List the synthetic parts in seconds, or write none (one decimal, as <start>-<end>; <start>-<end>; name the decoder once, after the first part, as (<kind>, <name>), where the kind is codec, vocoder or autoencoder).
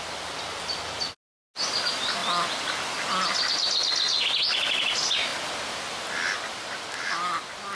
none